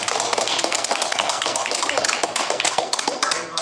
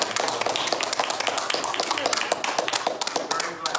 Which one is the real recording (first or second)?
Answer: second